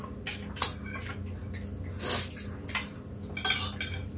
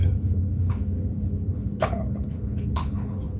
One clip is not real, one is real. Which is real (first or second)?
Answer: first